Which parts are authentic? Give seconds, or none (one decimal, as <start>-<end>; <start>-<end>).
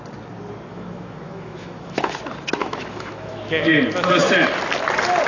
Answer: 0.0-0.7; 2.1-2.6; 3.7-5.3